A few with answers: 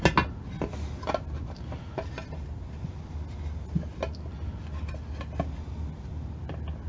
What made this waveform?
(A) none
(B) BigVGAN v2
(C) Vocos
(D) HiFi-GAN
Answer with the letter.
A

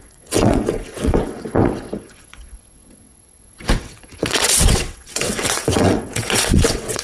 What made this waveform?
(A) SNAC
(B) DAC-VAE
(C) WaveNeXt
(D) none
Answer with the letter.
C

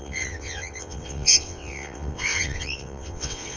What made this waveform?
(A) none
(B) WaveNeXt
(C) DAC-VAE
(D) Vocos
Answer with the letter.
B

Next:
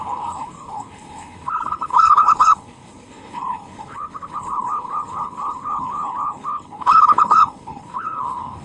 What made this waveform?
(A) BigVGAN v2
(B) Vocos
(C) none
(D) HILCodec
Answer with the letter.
D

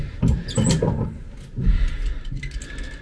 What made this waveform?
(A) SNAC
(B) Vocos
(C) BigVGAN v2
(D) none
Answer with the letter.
D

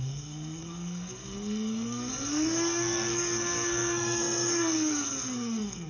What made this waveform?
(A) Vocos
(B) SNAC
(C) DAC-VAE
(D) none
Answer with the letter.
B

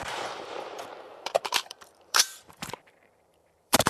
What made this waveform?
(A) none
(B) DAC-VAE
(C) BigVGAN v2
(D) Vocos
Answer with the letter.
C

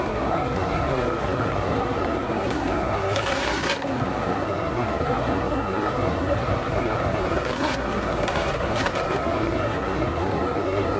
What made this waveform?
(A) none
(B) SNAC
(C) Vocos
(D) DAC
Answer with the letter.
B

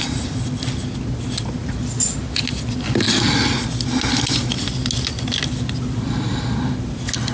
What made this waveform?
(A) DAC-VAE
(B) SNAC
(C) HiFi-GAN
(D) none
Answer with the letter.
D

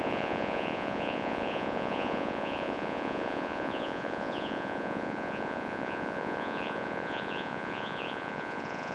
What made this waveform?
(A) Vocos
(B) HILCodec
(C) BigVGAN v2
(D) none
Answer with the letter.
A